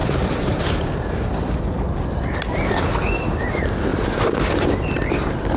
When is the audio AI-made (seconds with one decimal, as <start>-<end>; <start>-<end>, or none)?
0.0-1.6

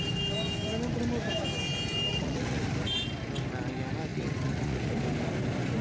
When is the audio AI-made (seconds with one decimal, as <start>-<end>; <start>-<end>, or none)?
2.1-2.6; 4.1-4.9

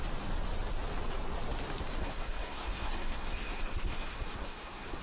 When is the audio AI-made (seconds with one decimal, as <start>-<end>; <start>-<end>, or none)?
2.0-5.0

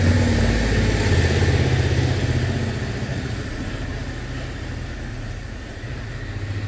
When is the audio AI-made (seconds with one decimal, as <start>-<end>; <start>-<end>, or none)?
3.1-3.7; 5.1-6.1

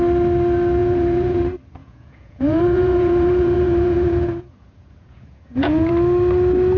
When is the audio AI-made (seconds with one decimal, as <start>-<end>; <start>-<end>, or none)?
0.8-1.4; 1.8-5.9

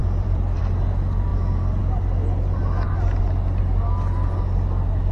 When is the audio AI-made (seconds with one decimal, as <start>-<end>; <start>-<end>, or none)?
0.0-0.6

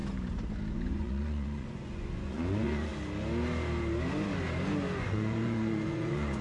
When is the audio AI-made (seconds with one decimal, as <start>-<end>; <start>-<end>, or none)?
0.7-2.9; 5.0-6.4